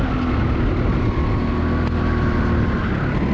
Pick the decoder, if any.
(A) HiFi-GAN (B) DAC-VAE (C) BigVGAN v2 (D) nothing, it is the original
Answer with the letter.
D